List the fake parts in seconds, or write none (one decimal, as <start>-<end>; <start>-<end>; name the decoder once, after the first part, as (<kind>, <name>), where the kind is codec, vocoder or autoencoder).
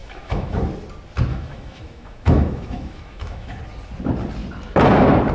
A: 0.0-0.6 (autoencoder, DAC-VAE); 1.3-3.6